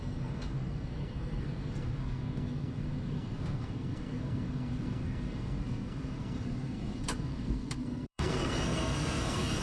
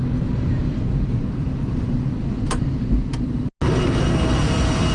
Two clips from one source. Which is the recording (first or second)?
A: second